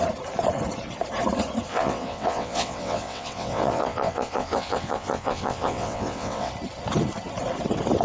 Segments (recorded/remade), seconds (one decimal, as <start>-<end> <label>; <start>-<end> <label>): 0.0-1.7 recorded; 1.7-6.5 remade; 6.5-8.0 recorded